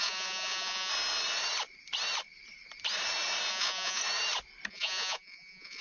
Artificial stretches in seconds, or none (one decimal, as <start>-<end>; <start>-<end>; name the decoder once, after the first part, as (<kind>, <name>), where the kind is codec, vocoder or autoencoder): 0.0-0.9 (vocoder, Vocos); 3.5-4.0; 4.7-5.8

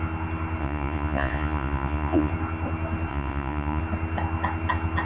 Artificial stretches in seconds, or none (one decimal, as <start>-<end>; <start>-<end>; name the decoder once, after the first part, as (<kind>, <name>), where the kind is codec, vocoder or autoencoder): 0.6-2.3 (vocoder, Vocos); 3.1-3.8

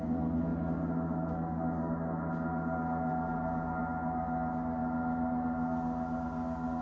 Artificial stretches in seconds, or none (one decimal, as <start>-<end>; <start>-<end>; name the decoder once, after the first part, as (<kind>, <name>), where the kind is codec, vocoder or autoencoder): none

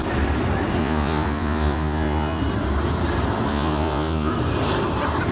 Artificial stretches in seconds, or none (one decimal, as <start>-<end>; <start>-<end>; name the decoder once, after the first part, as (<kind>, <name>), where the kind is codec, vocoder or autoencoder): 0.8-2.4 (vocoder, Vocos); 3.5-4.3

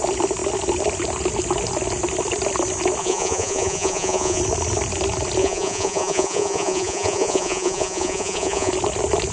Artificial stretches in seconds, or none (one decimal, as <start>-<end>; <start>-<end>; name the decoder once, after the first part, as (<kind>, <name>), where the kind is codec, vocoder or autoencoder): 3.0-4.4 (vocoder, Vocos); 5.4-8.7

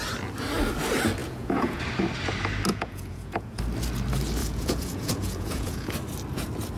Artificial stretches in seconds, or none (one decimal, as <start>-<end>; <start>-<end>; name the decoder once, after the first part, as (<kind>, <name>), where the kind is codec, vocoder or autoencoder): 1.2-1.8 (vocoder, Vocos); 2.7-3.6; 4.4-5.9

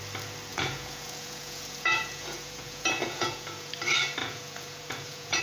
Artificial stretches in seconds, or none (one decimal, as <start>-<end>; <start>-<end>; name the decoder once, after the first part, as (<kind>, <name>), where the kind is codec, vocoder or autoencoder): 0.5-3.7 (vocoder, Vocos); 4.2-5.4

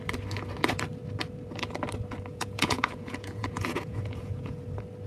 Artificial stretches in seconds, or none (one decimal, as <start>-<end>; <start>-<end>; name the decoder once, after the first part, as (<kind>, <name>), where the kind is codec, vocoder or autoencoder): 2.3-4.6 (vocoder, Vocos)